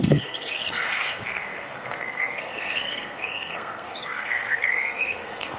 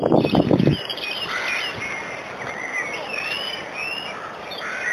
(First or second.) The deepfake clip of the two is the first